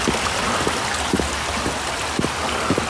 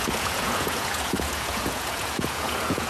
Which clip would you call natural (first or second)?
first